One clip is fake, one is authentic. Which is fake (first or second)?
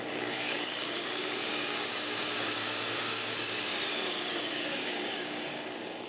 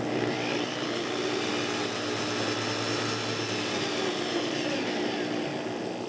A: first